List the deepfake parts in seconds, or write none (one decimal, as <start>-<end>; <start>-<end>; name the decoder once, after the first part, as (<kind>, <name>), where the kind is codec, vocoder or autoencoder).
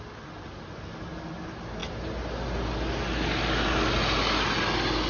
none